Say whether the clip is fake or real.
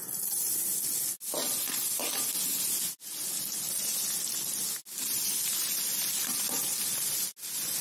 real